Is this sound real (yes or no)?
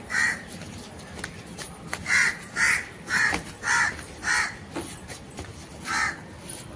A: yes